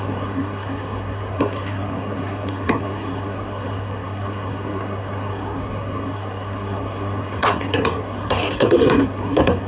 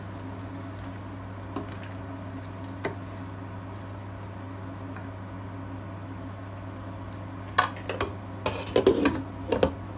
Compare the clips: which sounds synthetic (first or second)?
first